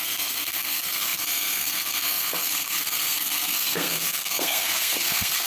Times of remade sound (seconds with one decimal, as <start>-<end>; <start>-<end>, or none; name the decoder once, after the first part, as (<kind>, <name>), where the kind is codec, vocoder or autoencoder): 0.0-5.5 (codec, SNAC)